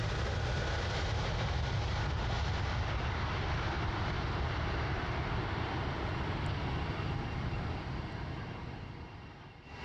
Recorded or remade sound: recorded